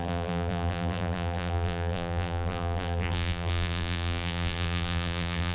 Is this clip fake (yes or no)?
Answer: yes